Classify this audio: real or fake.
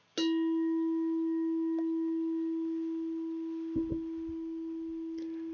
real